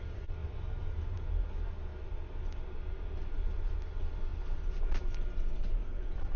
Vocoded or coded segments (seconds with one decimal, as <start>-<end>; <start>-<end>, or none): 1.9-3.2